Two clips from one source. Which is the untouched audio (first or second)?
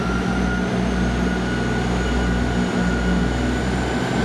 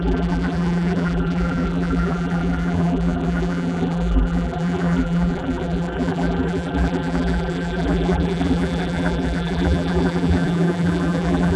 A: first